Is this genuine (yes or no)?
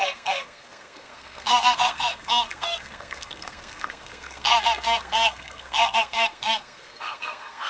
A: no